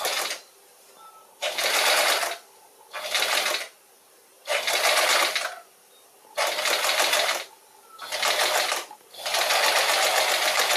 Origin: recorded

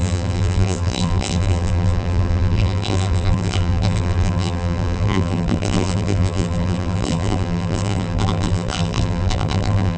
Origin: remade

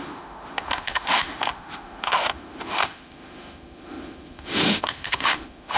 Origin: remade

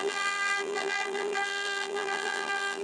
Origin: remade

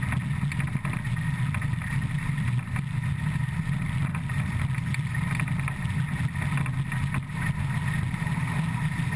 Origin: recorded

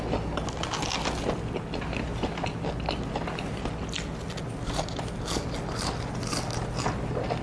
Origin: recorded